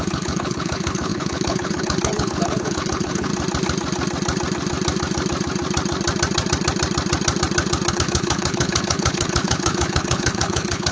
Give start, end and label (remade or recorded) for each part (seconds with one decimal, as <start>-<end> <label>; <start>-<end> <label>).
0.0-3.3 remade; 3.3-7.9 recorded; 7.9-10.9 remade